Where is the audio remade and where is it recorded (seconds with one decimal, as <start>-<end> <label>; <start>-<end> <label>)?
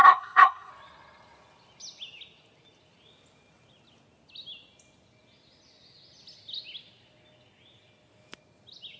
0.0-0.7 remade; 0.7-9.0 recorded